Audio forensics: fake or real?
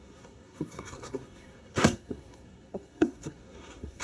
fake